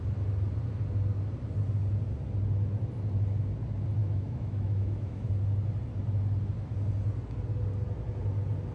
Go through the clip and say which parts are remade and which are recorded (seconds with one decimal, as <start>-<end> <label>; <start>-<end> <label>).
0.0-4.0 recorded; 4.0-5.3 remade; 5.3-8.7 recorded